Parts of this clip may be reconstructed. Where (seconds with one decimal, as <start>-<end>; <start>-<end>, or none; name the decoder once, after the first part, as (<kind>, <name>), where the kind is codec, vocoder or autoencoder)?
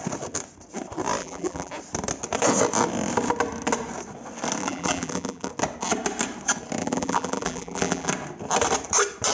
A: 1.2-1.7 (vocoder, BigVGAN v2); 4.6-5.5; 6.8-8.1